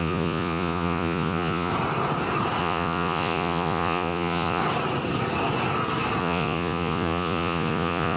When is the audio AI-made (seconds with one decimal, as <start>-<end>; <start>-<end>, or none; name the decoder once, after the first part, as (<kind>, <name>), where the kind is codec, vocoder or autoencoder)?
0.0-1.7 (vocoder, Vocos); 2.6-4.6; 6.2-8.2